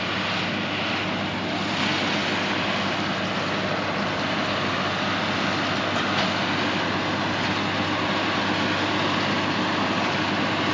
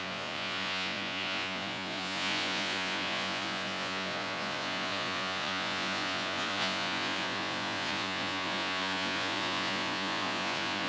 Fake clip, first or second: second